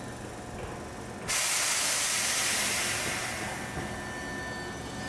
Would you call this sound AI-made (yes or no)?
no